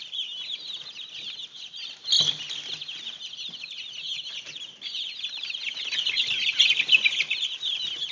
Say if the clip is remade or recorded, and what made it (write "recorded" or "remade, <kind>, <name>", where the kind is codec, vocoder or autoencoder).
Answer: recorded